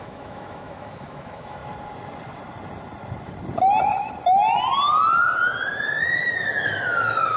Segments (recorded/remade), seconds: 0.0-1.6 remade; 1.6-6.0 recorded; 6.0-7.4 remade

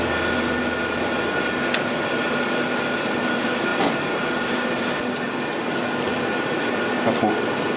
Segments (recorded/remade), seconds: 0.0-7.8 recorded

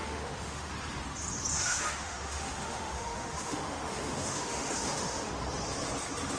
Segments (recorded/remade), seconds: 0.0-0.7 remade; 0.7-1.5 recorded; 1.5-5.3 remade; 5.3-6.4 recorded

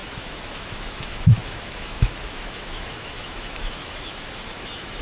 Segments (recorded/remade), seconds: 0.0-5.0 remade

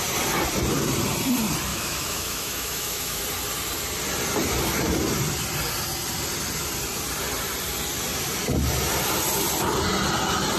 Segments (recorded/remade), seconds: 0.0-1.7 recorded; 1.7-3.2 remade; 3.2-10.6 recorded

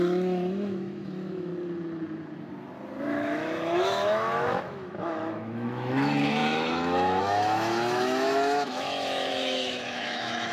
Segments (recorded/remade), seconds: 0.0-1.5 remade; 1.5-3.0 recorded; 3.0-10.5 remade